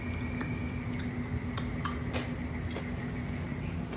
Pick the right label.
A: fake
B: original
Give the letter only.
B